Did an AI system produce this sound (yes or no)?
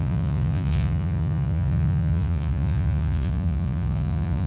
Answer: yes